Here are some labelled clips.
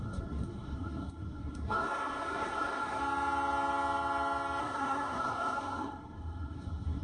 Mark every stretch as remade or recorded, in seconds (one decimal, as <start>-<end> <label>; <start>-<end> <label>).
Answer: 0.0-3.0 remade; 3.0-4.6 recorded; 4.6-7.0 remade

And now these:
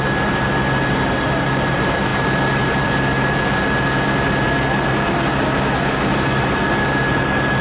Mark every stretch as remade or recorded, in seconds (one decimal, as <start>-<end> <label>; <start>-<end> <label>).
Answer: 0.0-7.6 recorded

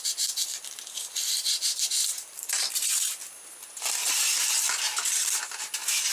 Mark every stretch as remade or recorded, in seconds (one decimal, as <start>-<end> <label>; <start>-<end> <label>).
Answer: 0.0-0.5 recorded; 0.5-2.7 remade; 2.7-6.1 recorded